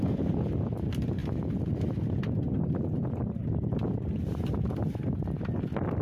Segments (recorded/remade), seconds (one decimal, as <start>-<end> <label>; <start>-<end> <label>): 0.0-6.0 recorded

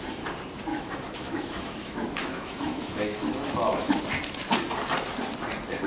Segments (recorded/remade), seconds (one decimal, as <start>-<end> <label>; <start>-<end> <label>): 0.0-0.7 recorded; 0.7-4.0 remade; 4.0-5.9 recorded